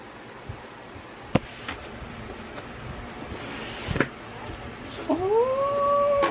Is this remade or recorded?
recorded